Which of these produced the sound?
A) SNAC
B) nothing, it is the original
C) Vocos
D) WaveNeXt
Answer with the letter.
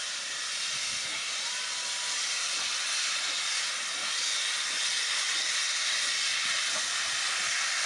B